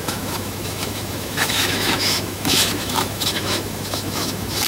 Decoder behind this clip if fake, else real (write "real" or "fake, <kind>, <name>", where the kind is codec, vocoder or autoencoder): fake, autoencoder, DAC-VAE